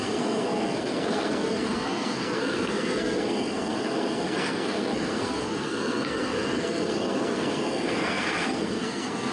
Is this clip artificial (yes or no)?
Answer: yes